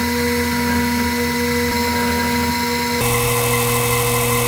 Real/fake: real